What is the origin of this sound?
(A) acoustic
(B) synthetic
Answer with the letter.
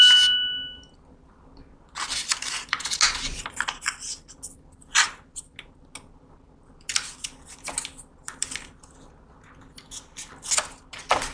A